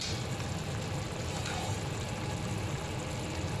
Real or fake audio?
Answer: real